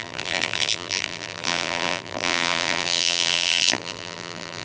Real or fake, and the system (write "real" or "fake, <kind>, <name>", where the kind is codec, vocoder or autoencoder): fake, vocoder, BigVGAN v2